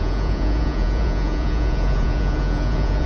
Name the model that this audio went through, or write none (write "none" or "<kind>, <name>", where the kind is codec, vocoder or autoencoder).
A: vocoder, Vocos